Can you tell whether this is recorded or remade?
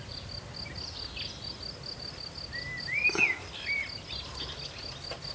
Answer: recorded